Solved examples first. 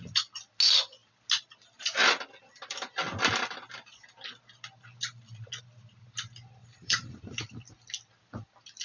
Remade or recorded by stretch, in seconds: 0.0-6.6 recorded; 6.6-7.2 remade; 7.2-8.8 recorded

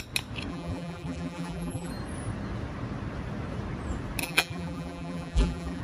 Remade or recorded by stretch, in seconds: 0.0-0.5 recorded; 0.5-1.9 remade; 1.9-4.2 recorded; 4.2-5.8 remade

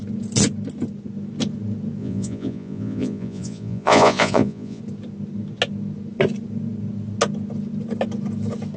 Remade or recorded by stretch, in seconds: 0.0-2.0 recorded; 2.0-4.8 remade; 4.8-8.8 recorded

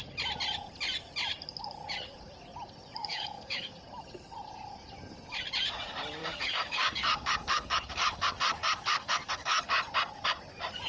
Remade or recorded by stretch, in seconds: 0.0-3.0 recorded; 3.0-3.8 remade; 3.8-6.2 recorded; 6.2-9.6 remade; 9.6-10.9 recorded

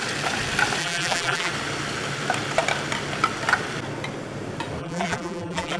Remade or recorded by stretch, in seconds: 0.0-0.8 recorded; 0.8-1.5 remade; 1.5-4.8 recorded; 4.8-5.8 remade

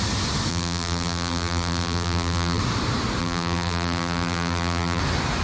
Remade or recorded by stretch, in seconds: 0.0-0.5 recorded; 0.5-2.6 remade; 2.6-3.2 recorded; 3.2-5.0 remade; 5.0-5.4 recorded

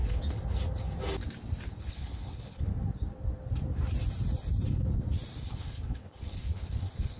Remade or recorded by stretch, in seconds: 0.0-1.8 recorded; 1.8-2.7 remade; 2.7-5.4 recorded; 5.4-7.2 remade

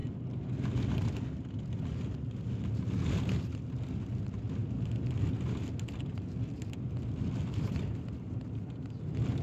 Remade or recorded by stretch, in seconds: 0.0-9.4 recorded